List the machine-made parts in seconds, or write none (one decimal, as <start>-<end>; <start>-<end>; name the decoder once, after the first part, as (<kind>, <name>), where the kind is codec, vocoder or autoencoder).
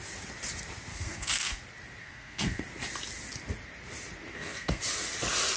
0.9-1.6 (codec, SNAC); 2.0-2.6; 4.3-4.8